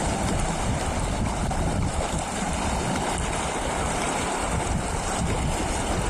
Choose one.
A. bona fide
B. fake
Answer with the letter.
A